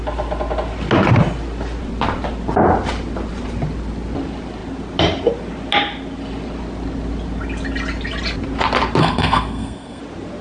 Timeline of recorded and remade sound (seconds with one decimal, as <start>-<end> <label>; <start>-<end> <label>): 0.0-9.0 recorded; 9.0-10.0 remade; 10.0-10.4 recorded